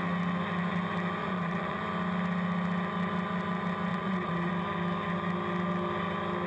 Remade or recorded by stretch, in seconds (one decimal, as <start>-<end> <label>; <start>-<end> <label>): 0.0-1.2 recorded; 1.2-1.8 remade; 1.8-3.9 recorded; 3.9-4.5 remade; 4.5-6.5 recorded